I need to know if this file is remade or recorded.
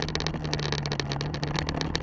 recorded